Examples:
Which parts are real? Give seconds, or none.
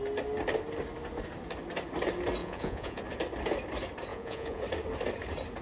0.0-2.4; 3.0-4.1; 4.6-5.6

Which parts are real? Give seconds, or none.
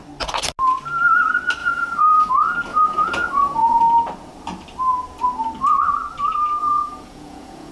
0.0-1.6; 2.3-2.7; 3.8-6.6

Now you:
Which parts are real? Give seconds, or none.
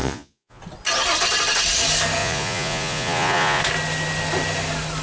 0.6-2.2; 3.6-5.0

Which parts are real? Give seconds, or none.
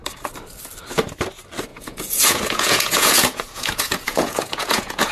0.0-1.7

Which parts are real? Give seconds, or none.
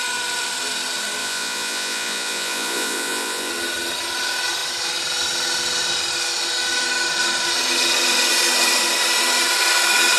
0.0-1.2; 3.5-10.2